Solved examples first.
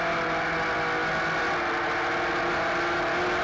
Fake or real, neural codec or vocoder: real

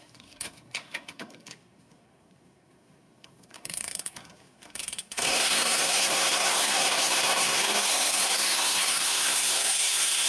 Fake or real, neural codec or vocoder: fake, codec, SNAC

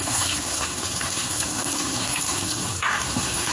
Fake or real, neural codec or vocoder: fake, codec, SNAC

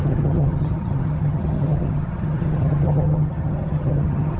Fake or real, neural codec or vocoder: fake, vocoder, HiFi-GAN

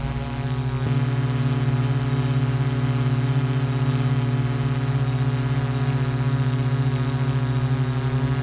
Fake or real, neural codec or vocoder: real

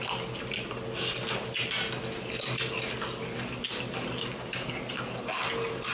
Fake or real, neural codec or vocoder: real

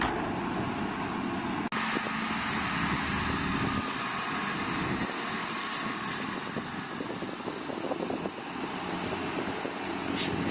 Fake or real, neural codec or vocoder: real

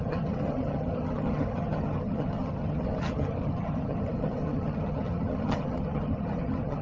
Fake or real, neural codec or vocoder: fake, vocoder, HiFi-GAN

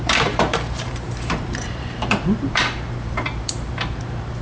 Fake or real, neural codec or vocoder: fake, vocoder, BigVGAN v2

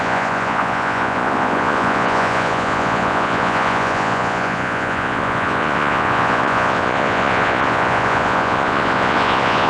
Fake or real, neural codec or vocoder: fake, vocoder, Vocos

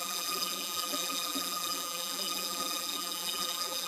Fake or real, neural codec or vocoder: fake, vocoder, BigVGAN v2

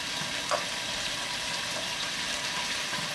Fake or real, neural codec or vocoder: real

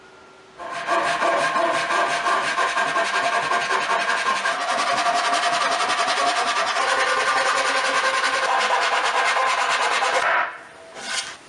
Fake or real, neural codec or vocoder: real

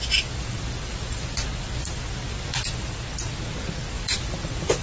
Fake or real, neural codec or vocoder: fake, vocoder, BigVGAN v2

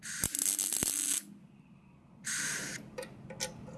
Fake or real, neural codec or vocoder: real